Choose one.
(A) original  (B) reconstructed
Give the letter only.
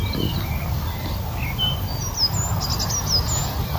A